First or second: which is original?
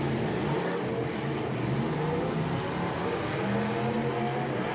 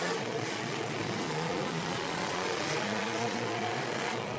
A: first